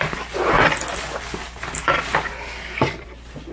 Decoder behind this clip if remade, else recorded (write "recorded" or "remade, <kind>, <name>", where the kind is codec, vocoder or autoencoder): recorded